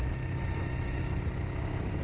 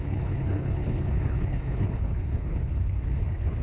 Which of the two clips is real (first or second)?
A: first